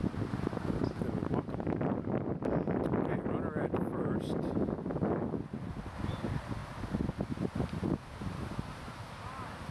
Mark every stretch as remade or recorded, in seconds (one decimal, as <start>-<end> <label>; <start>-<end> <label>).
0.0-9.7 recorded